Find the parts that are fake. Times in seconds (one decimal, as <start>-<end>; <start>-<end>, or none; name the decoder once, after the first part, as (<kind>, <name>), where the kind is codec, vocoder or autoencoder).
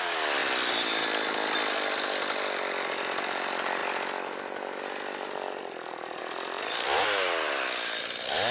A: none